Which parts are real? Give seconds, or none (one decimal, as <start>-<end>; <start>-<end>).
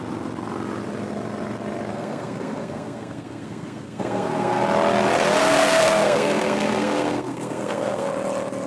0.0-1.9; 4.6-5.4; 8.1-8.7